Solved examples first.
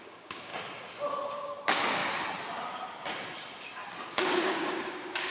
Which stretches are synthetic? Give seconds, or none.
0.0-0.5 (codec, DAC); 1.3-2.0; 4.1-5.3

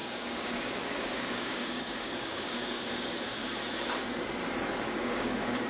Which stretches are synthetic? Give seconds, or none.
0.0-3.4 (codec, DAC); 4.8-5.7

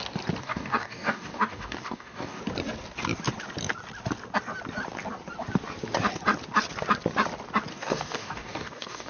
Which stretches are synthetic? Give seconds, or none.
0.4-2.4 (codec, DAC); 7.7-9.1

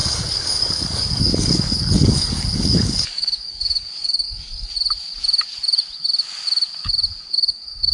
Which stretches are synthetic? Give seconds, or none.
0.0-4.7 (codec, DAC); 7.2-7.9